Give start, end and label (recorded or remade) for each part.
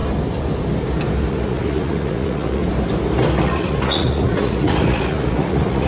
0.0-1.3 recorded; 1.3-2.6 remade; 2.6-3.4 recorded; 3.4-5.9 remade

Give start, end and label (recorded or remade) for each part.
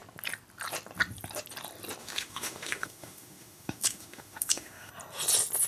0.0-2.0 recorded; 2.0-4.9 remade; 4.9-5.7 recorded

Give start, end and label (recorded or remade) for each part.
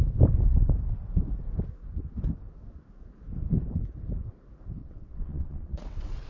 0.0-4.8 recorded; 4.8-6.3 remade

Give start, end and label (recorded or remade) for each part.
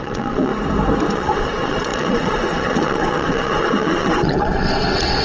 0.0-0.5 remade; 0.5-1.1 recorded; 1.1-5.2 remade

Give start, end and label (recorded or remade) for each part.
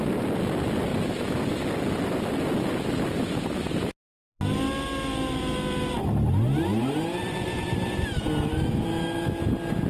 0.0-8.5 recorded; 8.5-9.4 remade; 9.4-9.9 recorded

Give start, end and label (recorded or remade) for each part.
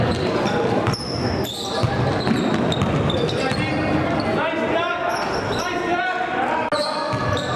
0.0-7.6 recorded